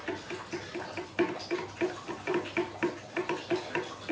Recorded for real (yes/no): yes